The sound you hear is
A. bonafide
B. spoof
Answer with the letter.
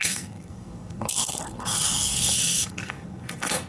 B